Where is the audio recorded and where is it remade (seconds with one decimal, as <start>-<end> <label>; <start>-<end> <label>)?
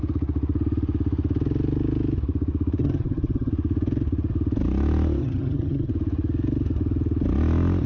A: 0.0-2.8 recorded; 2.8-3.5 remade; 3.5-5.2 recorded; 5.2-5.9 remade; 5.9-7.9 recorded